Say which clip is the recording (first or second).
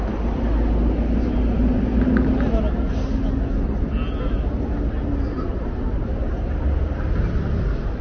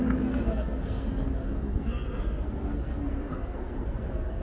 first